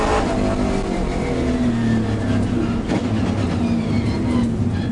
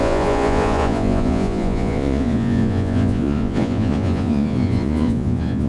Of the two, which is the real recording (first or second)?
first